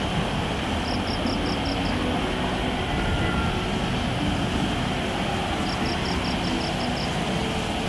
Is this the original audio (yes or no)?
yes